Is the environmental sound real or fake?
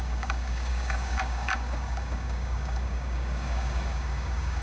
fake